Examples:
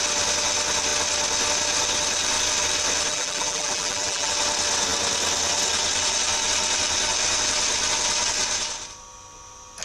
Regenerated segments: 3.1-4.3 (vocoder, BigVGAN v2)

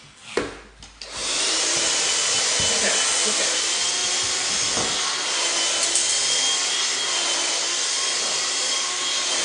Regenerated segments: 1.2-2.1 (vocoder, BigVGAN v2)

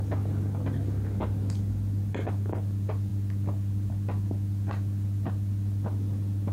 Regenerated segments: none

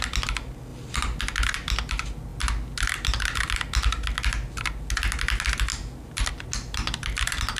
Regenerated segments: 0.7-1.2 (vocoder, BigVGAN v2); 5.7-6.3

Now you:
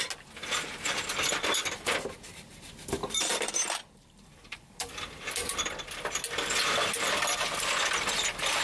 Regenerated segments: 3.0-4.9 (vocoder, BigVGAN v2)

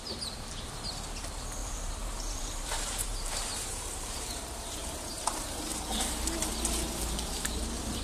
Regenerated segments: 1.6-5.0 (vocoder, BigVGAN v2); 5.7-6.5